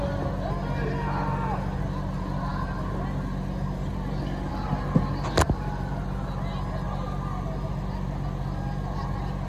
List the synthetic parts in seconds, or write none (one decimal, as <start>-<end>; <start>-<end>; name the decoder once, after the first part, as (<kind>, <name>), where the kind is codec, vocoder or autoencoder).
none